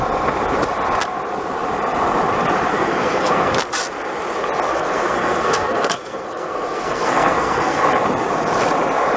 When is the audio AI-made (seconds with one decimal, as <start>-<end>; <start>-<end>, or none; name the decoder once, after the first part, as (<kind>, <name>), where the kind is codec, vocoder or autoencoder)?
2.7-3.5 (codec, SNAC); 4.7-7.8